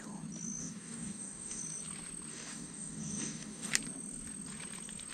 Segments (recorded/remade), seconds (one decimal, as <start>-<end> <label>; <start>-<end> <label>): 0.0-0.6 recorded; 0.6-1.6 remade; 1.6-2.3 recorded; 2.3-3.7 remade; 3.7-5.1 recorded

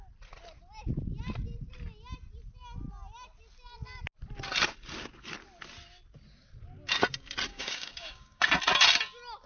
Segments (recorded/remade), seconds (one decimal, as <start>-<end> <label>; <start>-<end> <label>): 0.0-7.5 recorded; 7.5-8.4 remade; 8.4-9.5 recorded

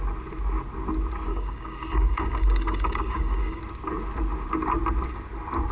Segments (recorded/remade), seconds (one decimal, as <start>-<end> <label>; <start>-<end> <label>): 0.0-1.3 recorded; 1.3-3.6 remade; 3.6-5.7 recorded

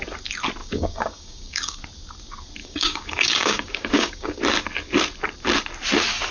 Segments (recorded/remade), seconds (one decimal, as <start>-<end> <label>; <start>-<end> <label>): 0.0-0.6 recorded; 0.6-1.8 remade; 1.8-2.6 recorded; 2.6-4.4 remade; 4.4-6.3 recorded

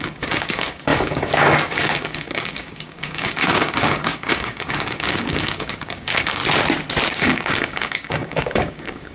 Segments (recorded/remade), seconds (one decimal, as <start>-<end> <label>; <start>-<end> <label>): 0.0-6.4 remade; 6.4-7.1 recorded; 7.1-9.1 remade